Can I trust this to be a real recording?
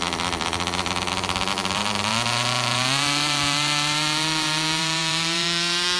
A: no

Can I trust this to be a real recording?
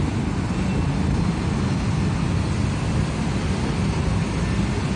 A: yes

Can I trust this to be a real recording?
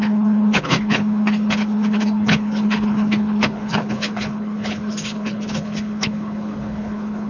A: no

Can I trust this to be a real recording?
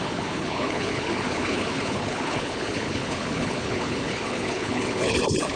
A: no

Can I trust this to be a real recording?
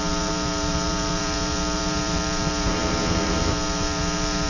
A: no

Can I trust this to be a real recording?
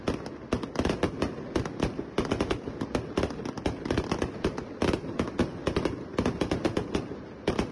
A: yes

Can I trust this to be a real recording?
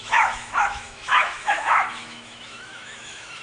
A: no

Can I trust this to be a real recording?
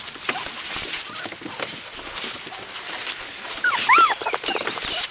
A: yes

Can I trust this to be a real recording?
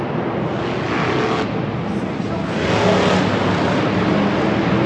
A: yes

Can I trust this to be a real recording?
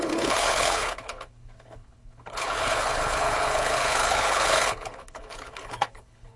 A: no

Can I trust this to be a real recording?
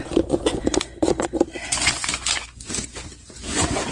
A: no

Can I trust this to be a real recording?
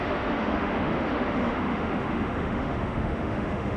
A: no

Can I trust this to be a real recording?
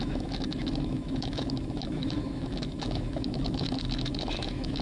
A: no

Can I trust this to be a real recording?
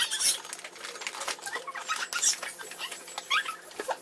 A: yes